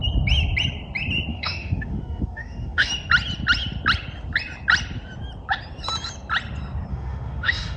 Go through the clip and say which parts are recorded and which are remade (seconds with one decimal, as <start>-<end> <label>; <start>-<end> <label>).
0.0-1.3 recorded; 1.3-2.9 remade; 2.9-6.9 recorded; 6.9-7.8 remade